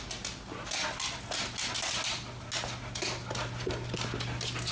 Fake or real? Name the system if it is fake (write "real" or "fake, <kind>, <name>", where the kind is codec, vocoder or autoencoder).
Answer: real